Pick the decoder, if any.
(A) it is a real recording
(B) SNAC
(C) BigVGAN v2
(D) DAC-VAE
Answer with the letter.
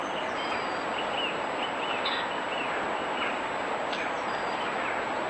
A